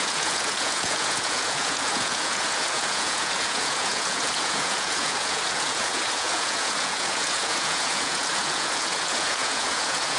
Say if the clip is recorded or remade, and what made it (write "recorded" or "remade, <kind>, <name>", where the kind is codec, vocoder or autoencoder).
remade, vocoder, Vocos